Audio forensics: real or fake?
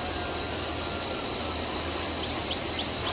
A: real